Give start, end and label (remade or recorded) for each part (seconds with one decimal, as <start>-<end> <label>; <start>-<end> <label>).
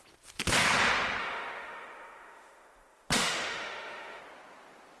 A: 0.0-1.2 recorded; 1.2-4.2 remade; 4.2-5.0 recorded